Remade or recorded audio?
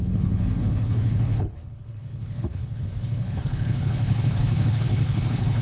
remade